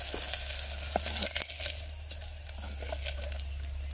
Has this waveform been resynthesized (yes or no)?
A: no